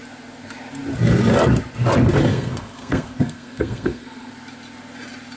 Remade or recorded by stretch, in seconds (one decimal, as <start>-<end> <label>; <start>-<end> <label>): 0.0-2.3 recorded; 2.3-4.3 remade; 4.3-5.4 recorded